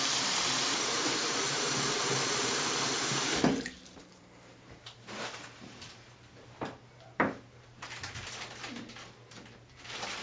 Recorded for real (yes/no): no